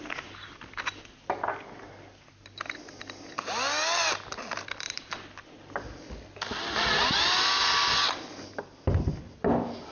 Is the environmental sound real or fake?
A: real